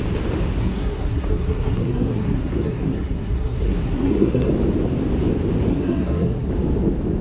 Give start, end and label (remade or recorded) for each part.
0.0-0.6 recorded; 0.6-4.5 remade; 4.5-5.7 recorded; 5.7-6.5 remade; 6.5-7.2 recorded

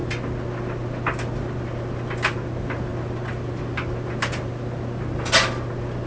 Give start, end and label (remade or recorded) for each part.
0.0-6.1 recorded

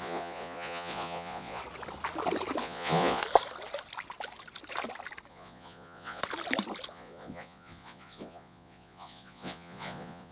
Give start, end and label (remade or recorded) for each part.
0.0-1.6 remade; 1.6-2.6 recorded; 2.6-3.2 remade; 3.2-5.3 recorded; 5.3-6.2 remade; 6.2-6.9 recorded; 6.9-10.3 remade

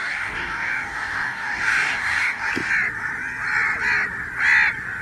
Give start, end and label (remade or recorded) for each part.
0.0-2.5 remade; 2.5-5.0 recorded